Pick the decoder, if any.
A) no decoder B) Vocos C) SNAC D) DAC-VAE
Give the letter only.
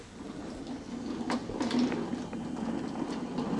A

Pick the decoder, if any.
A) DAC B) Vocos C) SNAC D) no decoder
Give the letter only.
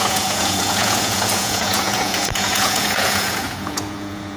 B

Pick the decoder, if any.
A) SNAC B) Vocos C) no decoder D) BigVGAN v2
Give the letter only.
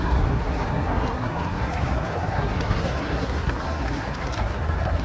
A